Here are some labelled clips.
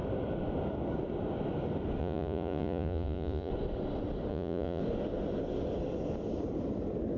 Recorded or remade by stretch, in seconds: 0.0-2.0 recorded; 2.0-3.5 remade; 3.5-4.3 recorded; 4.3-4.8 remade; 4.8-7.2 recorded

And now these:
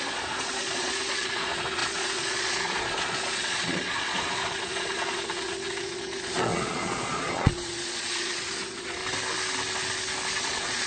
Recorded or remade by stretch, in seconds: 0.0-9.0 remade; 9.0-10.4 recorded; 10.4-10.9 remade

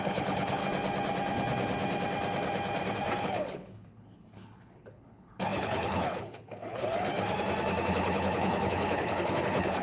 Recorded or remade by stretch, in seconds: 0.0-0.6 remade; 0.6-3.2 recorded; 3.2-7.1 remade; 7.1-7.9 recorded; 7.9-9.8 remade

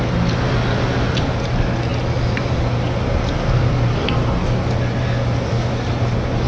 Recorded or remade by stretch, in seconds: 0.0-6.5 recorded

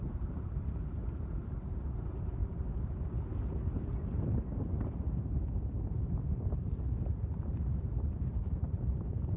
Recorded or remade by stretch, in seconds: 0.0-9.4 recorded

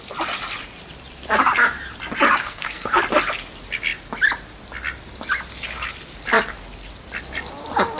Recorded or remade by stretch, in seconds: 0.0-2.4 recorded; 2.4-3.0 remade; 3.0-8.0 recorded

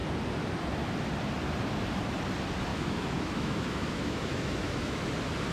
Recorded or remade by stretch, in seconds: 0.0-2.7 recorded; 2.7-5.1 remade; 5.1-5.5 recorded